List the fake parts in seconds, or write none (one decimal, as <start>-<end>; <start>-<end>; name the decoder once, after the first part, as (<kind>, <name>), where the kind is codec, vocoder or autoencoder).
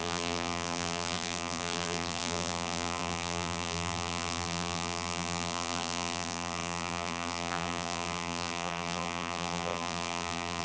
0.0-10.6 (vocoder, BigVGAN v2)